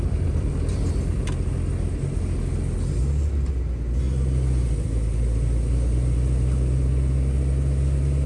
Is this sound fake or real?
real